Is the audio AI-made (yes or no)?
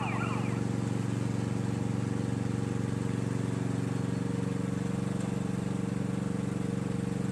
no